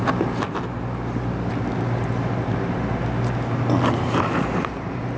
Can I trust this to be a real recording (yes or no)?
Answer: yes